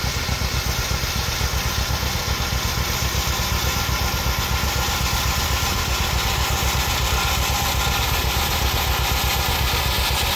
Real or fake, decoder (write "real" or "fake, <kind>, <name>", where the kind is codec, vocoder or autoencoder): real